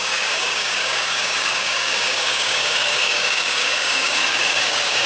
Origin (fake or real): fake